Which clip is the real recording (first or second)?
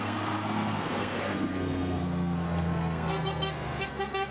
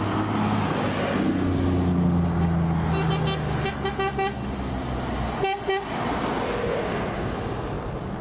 second